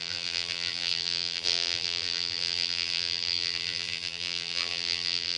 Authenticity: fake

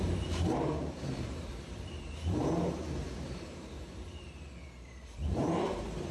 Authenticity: fake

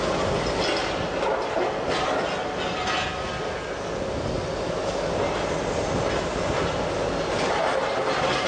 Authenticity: real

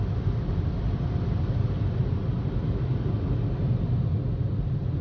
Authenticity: real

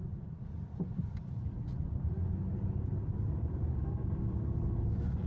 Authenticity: real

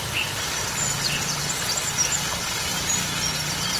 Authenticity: real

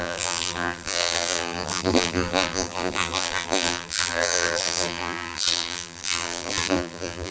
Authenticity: fake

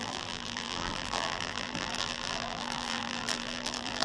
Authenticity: fake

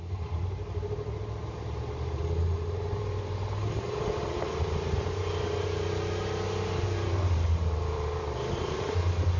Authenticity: fake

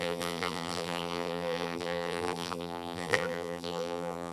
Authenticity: fake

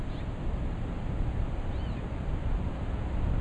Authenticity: real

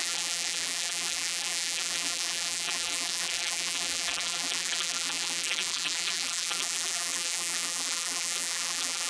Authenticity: fake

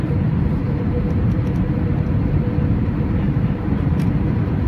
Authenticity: fake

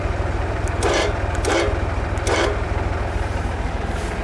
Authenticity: real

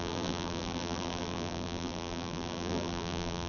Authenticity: fake